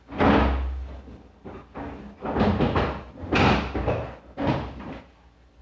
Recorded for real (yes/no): yes